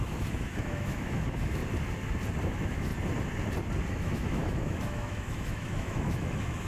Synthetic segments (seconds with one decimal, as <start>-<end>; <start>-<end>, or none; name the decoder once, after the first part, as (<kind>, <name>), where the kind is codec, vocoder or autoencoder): 0.0-1.6 (autoencoder, DAC-VAE); 2.4-2.9; 3.9-6.7